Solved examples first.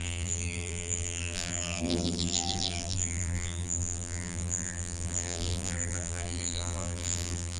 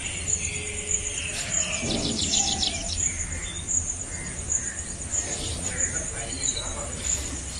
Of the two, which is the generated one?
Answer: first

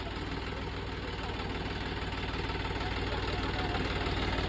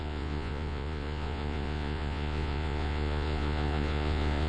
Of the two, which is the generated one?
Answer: second